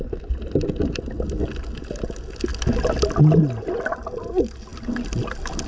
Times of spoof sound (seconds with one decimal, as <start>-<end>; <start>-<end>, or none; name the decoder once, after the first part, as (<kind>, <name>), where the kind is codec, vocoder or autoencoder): none